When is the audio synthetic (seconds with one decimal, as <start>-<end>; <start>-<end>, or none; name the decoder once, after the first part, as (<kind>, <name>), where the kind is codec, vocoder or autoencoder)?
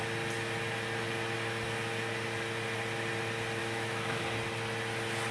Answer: 3.6-4.2 (autoencoder, DAC-VAE)